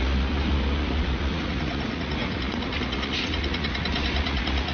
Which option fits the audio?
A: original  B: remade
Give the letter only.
B